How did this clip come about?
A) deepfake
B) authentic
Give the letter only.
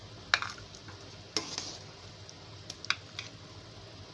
B